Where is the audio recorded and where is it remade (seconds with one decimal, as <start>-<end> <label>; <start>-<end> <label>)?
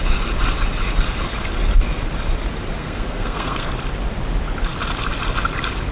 0.0-2.8 recorded; 2.8-3.7 remade; 3.7-5.9 recorded